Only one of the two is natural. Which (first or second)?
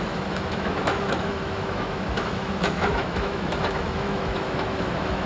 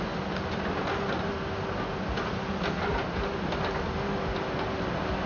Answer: second